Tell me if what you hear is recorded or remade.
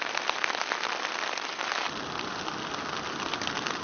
recorded